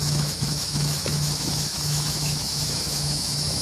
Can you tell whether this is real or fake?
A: fake